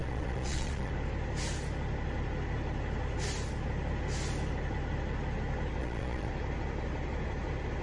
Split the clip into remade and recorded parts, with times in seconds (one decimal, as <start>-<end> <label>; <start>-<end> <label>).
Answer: 0.0-0.9 remade; 0.9-5.8 recorded; 5.8-6.3 remade; 6.3-7.8 recorded